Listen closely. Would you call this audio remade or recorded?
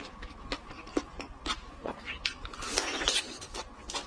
recorded